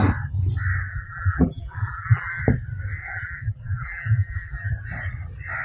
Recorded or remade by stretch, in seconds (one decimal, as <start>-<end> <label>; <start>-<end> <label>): 0.0-0.9 recorded; 0.9-2.4 remade; 2.4-3.0 recorded; 3.0-4.7 remade; 4.7-5.6 recorded

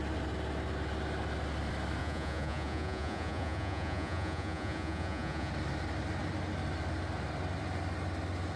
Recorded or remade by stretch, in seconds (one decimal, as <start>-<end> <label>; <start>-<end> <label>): 0.0-2.0 recorded; 2.0-5.5 remade; 5.5-8.6 recorded

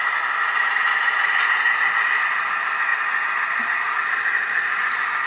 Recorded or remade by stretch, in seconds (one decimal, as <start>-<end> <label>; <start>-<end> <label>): 0.0-5.3 recorded

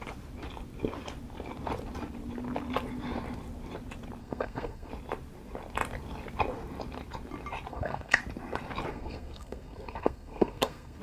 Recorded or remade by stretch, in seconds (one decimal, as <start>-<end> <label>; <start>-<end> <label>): 0.0-4.2 recorded; 4.2-4.9 remade; 4.9-7.7 recorded; 7.7-8.2 remade; 8.2-8.9 recorded; 8.9-11.0 remade

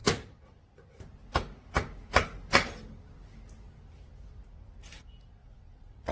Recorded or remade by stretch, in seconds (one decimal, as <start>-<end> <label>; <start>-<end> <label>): 0.0-5.4 recorded; 5.4-6.1 remade